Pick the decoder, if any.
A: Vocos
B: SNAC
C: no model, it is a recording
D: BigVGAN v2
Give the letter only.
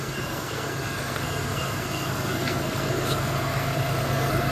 B